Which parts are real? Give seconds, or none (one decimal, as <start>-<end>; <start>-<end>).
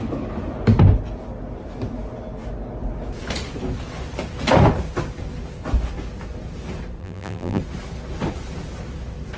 0.0-7.0; 7.6-9.4